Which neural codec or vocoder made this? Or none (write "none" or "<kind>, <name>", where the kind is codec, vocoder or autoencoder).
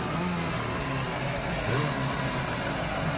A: none